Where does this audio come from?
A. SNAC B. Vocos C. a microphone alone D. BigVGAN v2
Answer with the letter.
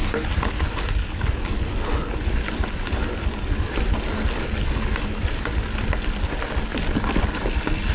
C